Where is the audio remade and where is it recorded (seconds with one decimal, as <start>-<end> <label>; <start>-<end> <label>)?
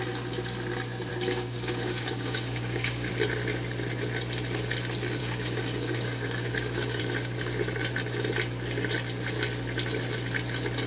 0.0-1.1 recorded; 1.1-3.1 remade; 3.1-5.2 recorded; 5.2-7.0 remade; 7.0-10.9 recorded